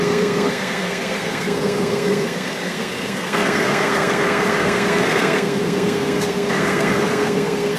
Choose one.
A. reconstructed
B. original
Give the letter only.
A